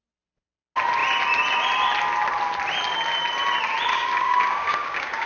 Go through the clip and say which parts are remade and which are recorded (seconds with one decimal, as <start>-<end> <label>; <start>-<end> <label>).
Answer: 0.0-3.9 recorded; 3.9-5.3 remade